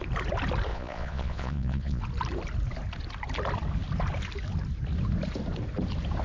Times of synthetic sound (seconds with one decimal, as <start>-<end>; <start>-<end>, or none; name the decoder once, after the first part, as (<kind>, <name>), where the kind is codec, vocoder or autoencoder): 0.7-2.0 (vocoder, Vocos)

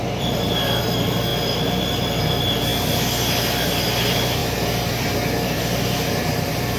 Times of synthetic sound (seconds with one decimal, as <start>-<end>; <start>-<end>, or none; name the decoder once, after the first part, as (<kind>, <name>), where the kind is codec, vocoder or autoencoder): 0.0-1.3 (vocoder, BigVGAN v2); 2.2-2.7; 3.4-4.4; 5.6-6.8

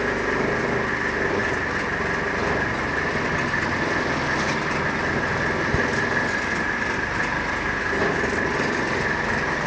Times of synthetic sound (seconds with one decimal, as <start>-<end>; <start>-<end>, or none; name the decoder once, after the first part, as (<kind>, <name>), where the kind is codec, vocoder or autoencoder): none

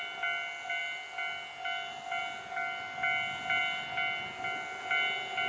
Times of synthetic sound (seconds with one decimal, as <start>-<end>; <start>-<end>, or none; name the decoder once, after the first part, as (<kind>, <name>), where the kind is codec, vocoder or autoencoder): none